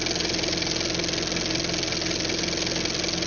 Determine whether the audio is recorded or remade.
recorded